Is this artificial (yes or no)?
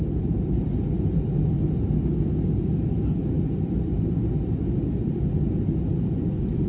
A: no